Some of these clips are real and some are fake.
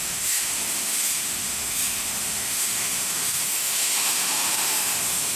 fake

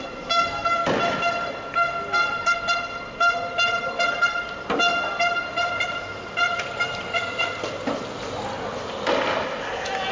real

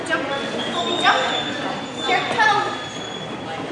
real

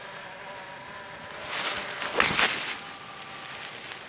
real